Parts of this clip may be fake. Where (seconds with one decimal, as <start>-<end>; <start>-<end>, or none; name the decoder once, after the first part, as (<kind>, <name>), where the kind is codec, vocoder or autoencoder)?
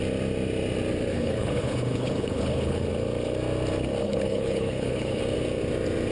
1.1-2.9 (codec, HILCodec); 4.0-5.2